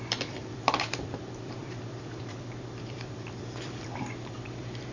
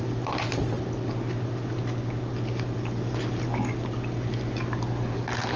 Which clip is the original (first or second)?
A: second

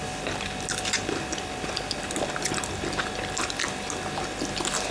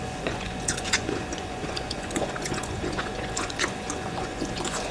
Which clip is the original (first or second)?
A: first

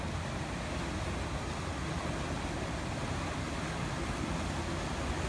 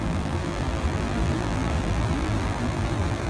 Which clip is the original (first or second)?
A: first